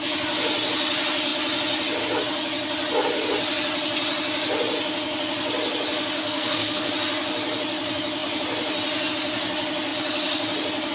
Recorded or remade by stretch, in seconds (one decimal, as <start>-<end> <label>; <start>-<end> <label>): 0.0-6.2 recorded; 6.2-6.9 remade; 6.9-10.9 recorded